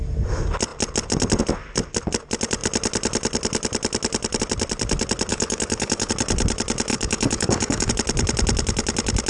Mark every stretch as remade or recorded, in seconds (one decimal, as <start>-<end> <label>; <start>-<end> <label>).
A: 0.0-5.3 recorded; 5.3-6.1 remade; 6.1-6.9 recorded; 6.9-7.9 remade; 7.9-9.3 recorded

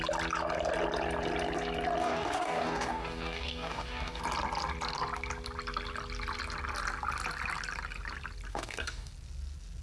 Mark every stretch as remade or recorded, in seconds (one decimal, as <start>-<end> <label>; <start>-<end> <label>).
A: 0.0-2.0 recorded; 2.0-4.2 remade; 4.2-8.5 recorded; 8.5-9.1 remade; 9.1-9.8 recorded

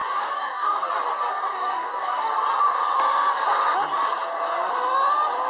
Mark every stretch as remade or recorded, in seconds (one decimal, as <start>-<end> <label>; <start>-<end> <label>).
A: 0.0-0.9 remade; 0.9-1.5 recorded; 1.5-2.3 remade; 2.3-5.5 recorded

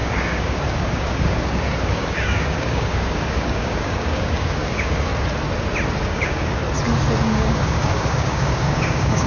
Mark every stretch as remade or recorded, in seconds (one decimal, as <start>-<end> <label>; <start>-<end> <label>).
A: 0.0-5.1 remade; 5.1-6.0 recorded; 6.0-6.6 remade; 6.6-7.2 recorded; 7.2-9.3 remade

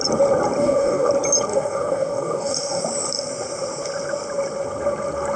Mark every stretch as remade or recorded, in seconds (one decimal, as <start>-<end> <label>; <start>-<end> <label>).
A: 0.0-0.6 recorded; 0.6-1.1 remade; 1.1-1.5 recorded; 1.5-2.8 remade; 2.8-5.4 recorded

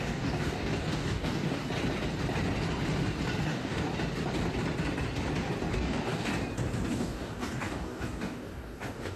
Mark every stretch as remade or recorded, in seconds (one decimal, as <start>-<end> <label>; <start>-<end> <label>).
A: 0.0-1.6 remade; 1.6-3.4 recorded; 3.4-3.9 remade; 3.9-5.7 recorded; 5.7-6.3 remade; 6.3-6.9 recorded; 6.9-9.2 remade